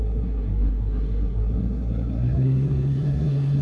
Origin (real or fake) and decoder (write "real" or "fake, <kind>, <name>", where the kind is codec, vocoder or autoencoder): fake, codec, SNAC